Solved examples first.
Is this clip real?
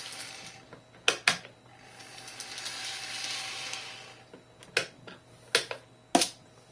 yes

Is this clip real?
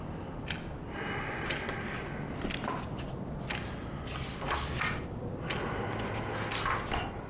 yes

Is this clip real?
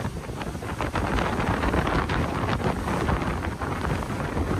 yes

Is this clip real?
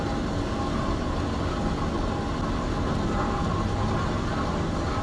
yes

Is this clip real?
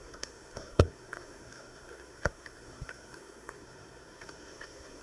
no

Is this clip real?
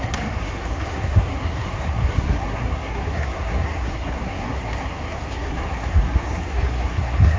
no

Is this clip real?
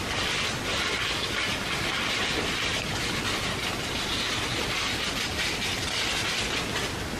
yes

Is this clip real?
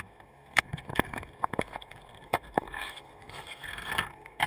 no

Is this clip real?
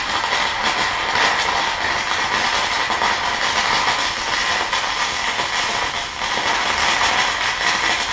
yes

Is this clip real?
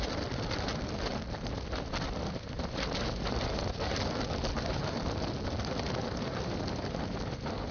yes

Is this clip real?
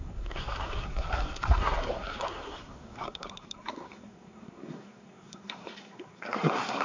no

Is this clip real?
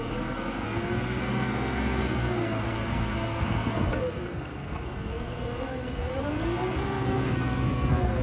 no